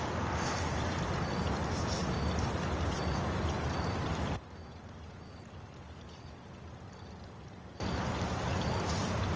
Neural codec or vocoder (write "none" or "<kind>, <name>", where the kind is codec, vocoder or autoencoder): none